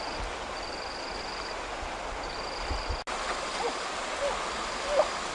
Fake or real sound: real